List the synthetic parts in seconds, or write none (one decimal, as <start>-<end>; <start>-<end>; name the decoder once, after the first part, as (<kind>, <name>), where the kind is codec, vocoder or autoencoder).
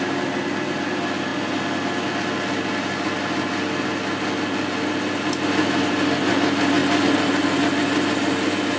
none